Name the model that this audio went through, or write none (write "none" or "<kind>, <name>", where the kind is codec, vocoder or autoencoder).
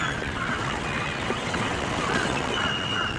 vocoder, WaveNeXt